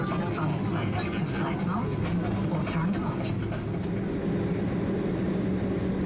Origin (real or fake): real